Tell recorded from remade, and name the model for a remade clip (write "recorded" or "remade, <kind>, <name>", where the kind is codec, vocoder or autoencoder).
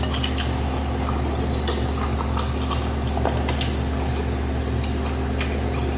recorded